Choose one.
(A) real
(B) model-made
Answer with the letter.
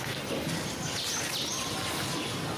A